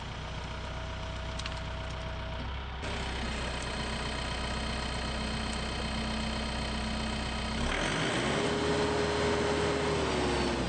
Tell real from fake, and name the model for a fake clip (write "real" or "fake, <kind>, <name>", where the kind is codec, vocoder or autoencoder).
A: real